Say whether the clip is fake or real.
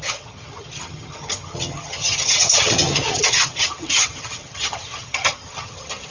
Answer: fake